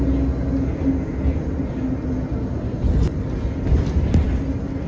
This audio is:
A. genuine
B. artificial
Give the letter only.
A